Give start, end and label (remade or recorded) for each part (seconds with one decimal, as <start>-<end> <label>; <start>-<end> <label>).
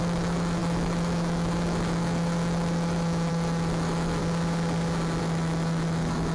0.0-4.2 remade; 4.2-5.2 recorded; 5.2-6.3 remade